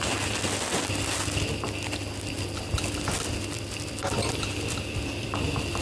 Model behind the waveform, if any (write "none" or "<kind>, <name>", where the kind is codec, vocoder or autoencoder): none